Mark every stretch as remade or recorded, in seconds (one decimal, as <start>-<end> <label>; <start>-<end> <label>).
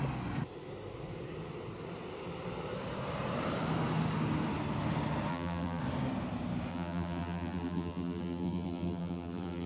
0.0-5.3 recorded; 5.3-5.8 remade; 5.8-6.7 recorded; 6.7-9.7 remade